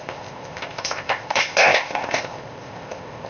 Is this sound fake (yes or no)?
yes